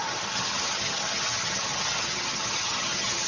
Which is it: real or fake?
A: fake